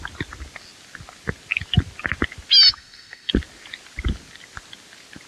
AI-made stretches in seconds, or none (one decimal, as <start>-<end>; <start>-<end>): 2.7-3.3

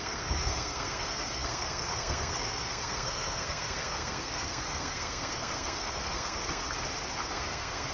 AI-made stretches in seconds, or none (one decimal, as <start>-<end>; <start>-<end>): 0.0-6.6; 7.3-7.9

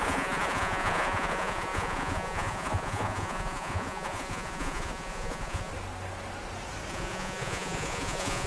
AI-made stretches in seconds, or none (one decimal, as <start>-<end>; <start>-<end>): 0.0-5.7; 6.9-8.5

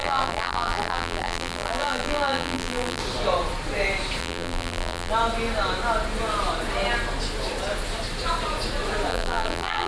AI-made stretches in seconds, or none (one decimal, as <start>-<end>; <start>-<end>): 0.0-3.0; 4.2-5.1; 9.1-9.9

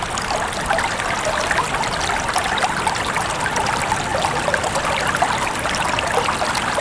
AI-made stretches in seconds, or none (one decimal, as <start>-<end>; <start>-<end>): none

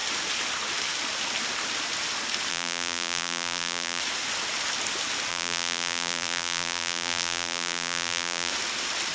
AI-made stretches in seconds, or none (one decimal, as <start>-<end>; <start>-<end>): 2.5-4.0; 5.3-8.5

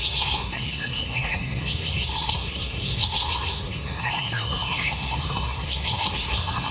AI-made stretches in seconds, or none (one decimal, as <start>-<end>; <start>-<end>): 0.0-6.7